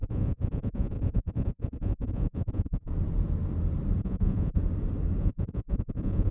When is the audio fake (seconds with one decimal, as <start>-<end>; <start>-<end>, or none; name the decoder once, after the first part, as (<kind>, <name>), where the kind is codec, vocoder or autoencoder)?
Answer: 0.0-2.9 (vocoder, Vocos); 4.0-4.6; 5.2-6.3